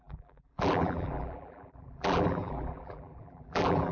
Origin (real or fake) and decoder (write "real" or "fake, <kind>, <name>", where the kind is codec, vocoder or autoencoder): fake, vocoder, BigVGAN v2